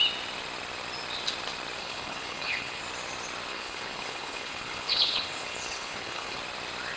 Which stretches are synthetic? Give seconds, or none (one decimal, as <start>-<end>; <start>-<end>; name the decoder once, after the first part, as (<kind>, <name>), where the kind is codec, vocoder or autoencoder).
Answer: 1.8-2.8 (codec, HILCodec); 3.5-6.4

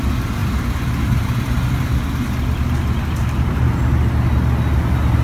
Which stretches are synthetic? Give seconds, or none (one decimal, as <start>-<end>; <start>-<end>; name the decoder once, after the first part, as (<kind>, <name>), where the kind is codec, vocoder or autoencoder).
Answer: none

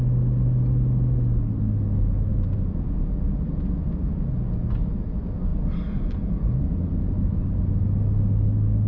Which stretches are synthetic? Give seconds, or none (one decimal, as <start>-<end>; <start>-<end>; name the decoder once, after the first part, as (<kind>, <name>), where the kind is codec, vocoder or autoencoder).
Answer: 2.3-4.2 (vocoder, Vocos)

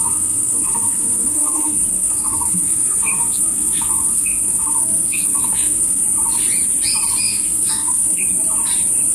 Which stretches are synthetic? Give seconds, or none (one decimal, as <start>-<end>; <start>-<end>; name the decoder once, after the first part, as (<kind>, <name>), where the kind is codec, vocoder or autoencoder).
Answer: 0.0-6.0 (codec, SNAC); 7.2-8.2

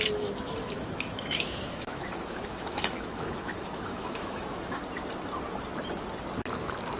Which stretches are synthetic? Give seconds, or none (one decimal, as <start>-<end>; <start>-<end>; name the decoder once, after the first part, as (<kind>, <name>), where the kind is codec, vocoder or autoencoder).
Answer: 0.6-4.8 (autoencoder, DAC-VAE)

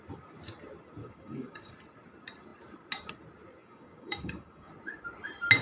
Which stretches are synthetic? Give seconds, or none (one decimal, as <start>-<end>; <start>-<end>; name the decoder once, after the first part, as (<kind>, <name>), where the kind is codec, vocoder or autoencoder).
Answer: 1.0-1.7 (codec, DAC); 3.6-4.7